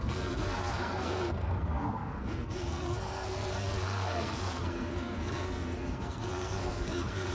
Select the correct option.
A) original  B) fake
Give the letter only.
B